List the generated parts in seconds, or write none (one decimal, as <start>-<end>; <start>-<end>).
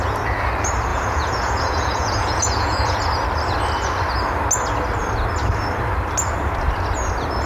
0.9-3.0